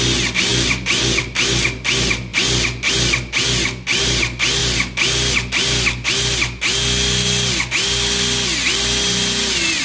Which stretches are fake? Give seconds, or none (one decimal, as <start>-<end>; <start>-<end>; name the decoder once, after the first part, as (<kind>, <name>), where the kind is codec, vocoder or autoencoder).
none